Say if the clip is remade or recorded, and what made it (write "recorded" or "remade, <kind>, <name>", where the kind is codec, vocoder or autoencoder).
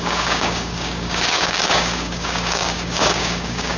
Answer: remade, codec, DAC